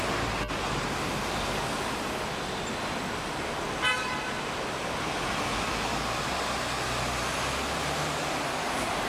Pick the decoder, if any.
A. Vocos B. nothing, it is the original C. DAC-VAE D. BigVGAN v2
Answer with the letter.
B